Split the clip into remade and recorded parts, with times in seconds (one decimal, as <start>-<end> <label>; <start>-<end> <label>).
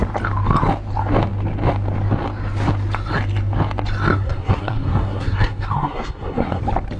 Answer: 0.0-4.1 recorded; 4.1-6.6 remade; 6.6-7.0 recorded